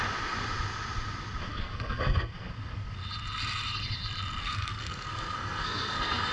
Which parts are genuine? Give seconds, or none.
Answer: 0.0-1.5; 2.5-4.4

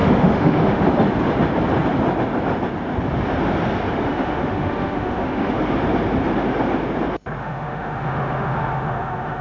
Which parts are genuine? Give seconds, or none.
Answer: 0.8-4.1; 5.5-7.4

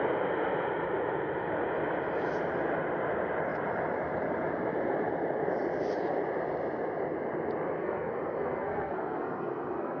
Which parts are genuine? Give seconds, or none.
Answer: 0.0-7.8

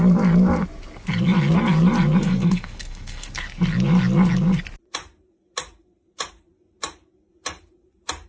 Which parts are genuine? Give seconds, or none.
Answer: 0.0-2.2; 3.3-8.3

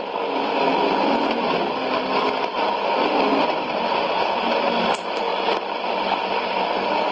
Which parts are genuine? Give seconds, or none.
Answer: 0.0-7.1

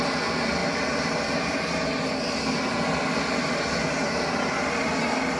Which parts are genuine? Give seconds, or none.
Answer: 0.0-5.4

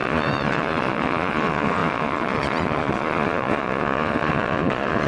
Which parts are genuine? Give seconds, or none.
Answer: none

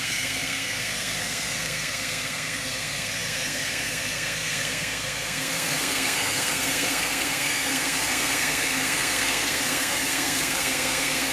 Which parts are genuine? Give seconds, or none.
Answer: none